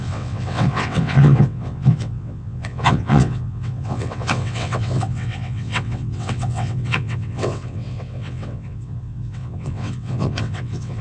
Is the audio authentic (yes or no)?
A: no